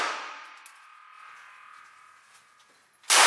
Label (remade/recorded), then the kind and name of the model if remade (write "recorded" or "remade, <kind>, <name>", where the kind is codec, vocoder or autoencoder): recorded